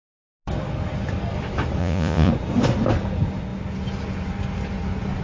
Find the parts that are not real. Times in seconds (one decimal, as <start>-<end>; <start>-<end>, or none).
1.8-2.3

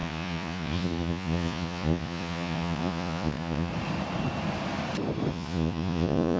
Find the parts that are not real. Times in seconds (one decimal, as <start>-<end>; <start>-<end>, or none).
0.0-3.7; 5.3-6.4

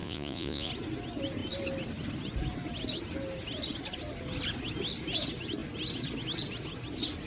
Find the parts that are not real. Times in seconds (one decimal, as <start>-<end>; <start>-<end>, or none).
0.0-0.7